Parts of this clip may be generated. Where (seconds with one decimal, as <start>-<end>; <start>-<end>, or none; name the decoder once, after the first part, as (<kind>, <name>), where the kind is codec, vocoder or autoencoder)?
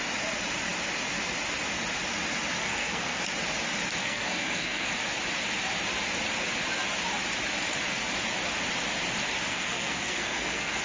2.6-3.2 (codec, SNAC); 4.0-4.9; 9.5-10.8